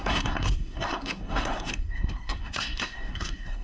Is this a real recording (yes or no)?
no